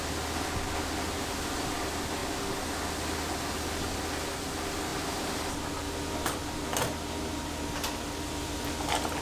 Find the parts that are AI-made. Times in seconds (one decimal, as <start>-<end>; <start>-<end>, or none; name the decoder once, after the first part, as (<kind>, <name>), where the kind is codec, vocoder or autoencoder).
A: none